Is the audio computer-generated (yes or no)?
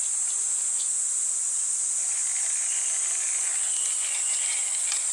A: no